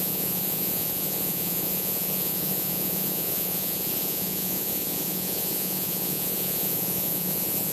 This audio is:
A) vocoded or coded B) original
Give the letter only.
A